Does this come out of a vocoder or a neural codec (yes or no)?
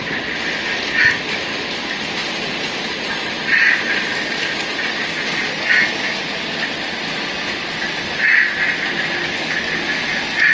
no